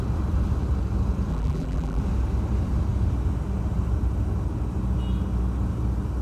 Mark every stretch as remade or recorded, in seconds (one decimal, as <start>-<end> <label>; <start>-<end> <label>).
0.0-1.3 recorded; 1.3-2.0 remade; 2.0-6.2 recorded